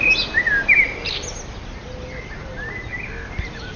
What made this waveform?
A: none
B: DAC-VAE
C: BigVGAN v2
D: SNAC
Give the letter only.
A